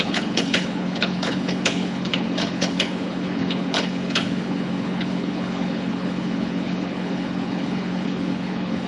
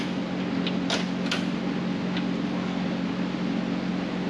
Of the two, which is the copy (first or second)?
first